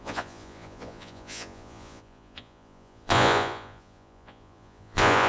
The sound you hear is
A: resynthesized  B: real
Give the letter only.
A